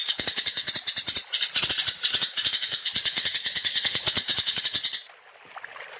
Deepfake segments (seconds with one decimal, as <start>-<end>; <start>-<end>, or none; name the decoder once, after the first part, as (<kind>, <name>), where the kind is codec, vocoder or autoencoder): 0.0-0.7 (codec, DAC); 2.1-4.6